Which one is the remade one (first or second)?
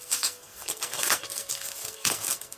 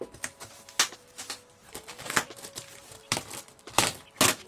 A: first